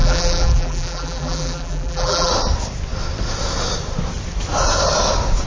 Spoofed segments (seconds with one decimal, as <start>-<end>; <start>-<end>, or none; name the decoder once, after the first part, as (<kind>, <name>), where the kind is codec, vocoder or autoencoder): 0.0-2.3 (vocoder, BigVGAN v2)